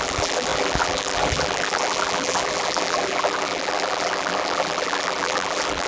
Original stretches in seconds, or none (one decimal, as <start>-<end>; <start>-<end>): none